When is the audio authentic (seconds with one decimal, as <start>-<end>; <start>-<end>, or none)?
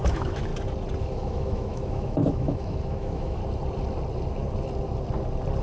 0.5-1.0; 3.4-5.6